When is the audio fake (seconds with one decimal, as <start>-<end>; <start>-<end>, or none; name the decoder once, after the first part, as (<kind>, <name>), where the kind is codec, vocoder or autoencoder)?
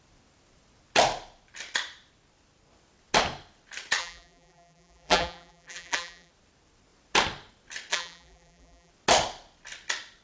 4.0-6.3 (vocoder, BigVGAN v2); 7.9-8.9